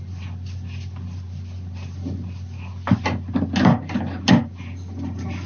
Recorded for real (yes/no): yes